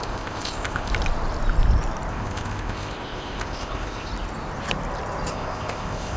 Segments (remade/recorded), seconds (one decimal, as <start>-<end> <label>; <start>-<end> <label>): 0.0-0.9 remade; 0.9-2.1 recorded; 2.1-4.1 remade; 4.1-5.3 recorded; 5.3-6.2 remade